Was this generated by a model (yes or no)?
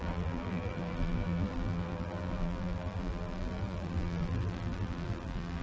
yes